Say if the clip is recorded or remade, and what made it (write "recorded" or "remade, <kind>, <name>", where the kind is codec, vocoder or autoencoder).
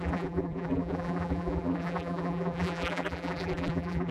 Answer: remade, vocoder, BigVGAN v2